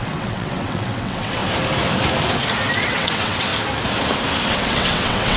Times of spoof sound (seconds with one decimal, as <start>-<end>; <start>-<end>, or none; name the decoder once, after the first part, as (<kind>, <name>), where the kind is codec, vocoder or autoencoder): 0.0-1.4 (vocoder, WaveNeXt); 2.8-3.5; 4.5-5.4

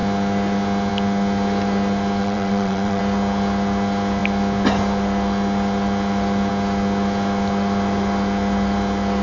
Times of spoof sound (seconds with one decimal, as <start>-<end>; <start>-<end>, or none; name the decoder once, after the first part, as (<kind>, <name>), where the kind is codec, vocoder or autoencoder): 2.2-3.0 (vocoder, WaveNeXt)

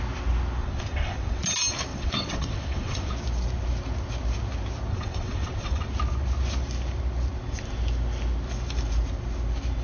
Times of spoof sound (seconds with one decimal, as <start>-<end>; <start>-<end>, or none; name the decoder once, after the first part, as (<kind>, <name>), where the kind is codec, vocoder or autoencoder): 0.6-1.4 (vocoder, WaveNeXt); 1.9-3.1; 4.9-5.9

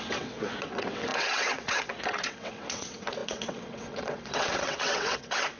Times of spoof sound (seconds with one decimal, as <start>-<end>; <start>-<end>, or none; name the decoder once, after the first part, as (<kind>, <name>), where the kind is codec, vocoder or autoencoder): 0.0-5.6 (vocoder, WaveNeXt)

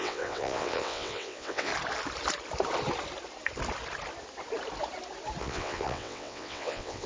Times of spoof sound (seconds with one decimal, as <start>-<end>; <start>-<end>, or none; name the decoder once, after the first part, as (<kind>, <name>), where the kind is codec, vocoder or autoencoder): 0.0-1.7 (vocoder, WaveNeXt); 5.4-7.1

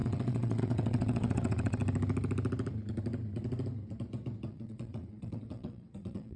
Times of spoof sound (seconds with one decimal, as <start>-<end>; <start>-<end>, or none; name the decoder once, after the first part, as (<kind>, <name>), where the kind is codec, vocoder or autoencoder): 0.0-1.8 (vocoder, WaveNeXt); 4.5-6.4

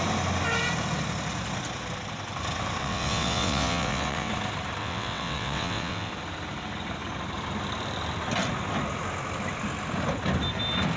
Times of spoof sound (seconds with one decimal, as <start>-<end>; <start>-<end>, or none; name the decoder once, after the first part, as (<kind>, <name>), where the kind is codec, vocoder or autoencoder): 2.8-4.3 (vocoder, WaveNeXt); 4.8-6.1